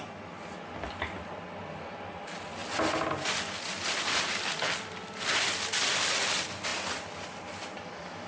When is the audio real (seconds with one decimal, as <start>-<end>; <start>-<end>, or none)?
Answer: 0.0-8.3